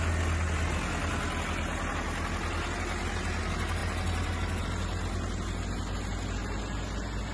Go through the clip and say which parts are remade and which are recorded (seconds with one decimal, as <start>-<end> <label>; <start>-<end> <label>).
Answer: 0.0-7.3 recorded